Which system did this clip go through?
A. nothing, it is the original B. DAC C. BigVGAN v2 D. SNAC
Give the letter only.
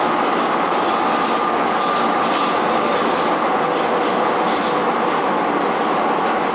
A